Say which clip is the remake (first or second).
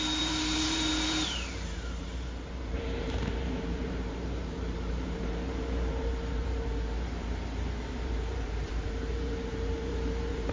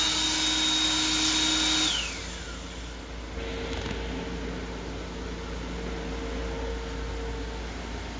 first